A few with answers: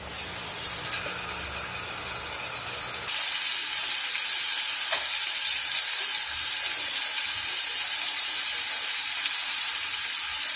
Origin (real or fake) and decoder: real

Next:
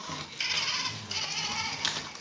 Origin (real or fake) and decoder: real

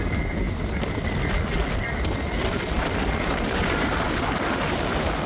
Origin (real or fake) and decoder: real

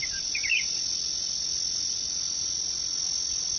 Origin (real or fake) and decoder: real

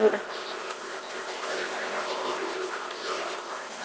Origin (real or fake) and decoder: fake, codec, ZipCodec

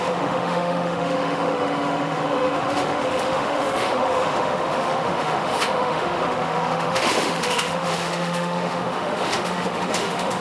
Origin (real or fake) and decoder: fake, autoencoder, DAC-VAE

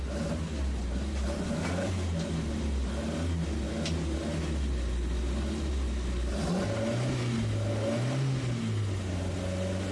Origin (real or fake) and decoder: real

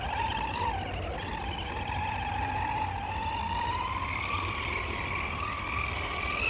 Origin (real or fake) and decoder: real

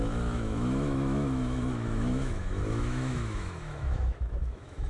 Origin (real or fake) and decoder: fake, autoencoder, DAC-VAE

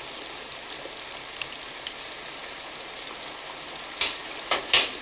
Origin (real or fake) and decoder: real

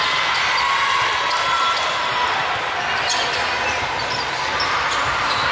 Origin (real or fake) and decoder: real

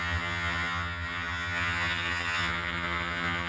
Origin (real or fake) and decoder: fake, vocoder, HiFi-GAN